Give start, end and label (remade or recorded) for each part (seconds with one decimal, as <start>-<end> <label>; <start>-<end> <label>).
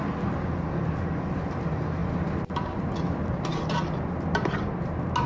0.0-5.3 recorded